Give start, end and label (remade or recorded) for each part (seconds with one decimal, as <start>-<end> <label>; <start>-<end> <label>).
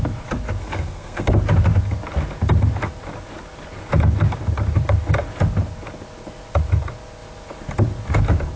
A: 0.0-0.6 recorded; 0.6-1.3 remade; 1.3-8.6 recorded